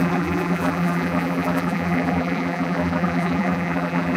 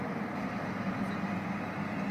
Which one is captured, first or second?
second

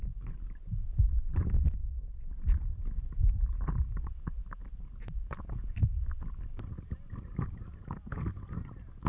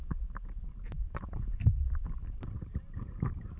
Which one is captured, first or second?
first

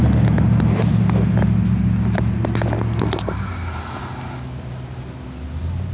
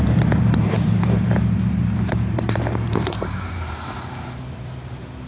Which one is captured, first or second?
first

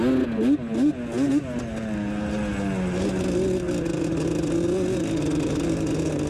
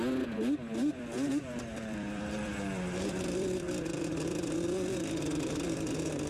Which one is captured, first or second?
first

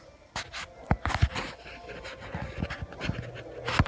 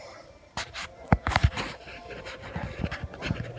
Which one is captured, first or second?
first